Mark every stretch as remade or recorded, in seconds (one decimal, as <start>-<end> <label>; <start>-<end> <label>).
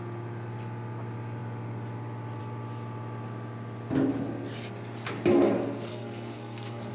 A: 0.0-5.9 recorded; 5.9-6.9 remade